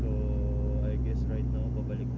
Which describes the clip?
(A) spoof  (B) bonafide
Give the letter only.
B